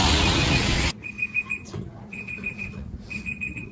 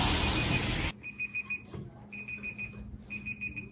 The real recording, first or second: second